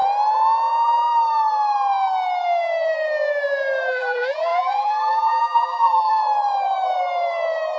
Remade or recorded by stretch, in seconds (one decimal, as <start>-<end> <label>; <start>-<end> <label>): 0.0-3.9 recorded; 3.9-6.2 remade; 6.2-7.8 recorded